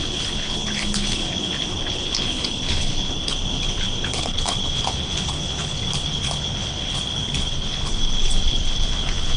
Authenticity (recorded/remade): remade